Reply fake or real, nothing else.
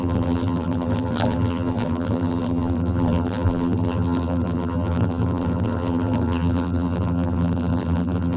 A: fake